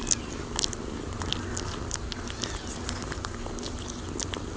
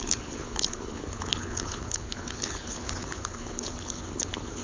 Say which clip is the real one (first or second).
first